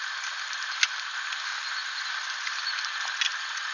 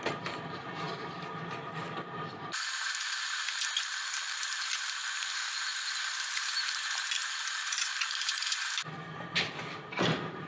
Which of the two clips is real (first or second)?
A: first